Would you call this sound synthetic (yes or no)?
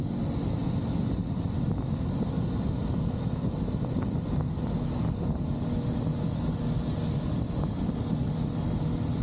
no